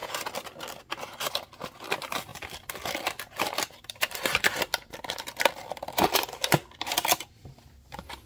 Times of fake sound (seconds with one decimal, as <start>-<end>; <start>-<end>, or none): 1.3-8.3